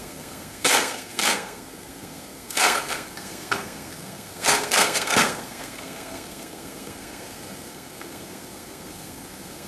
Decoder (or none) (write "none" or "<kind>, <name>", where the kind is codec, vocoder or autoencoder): codec, SNAC